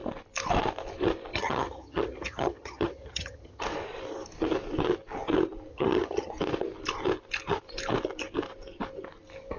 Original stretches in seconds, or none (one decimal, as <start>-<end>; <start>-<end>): 0.0-1.3; 3.6-5.7; 6.3-9.6